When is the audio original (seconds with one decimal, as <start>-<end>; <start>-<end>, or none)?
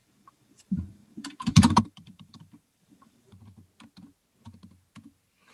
3.3-5.5